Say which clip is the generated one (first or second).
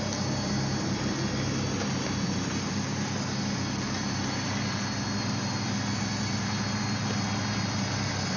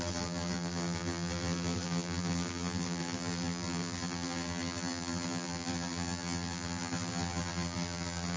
second